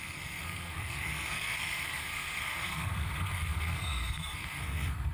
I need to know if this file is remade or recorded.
remade